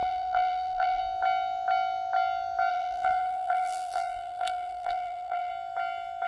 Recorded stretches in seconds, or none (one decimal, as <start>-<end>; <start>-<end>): 1.0-2.7; 5.5-6.3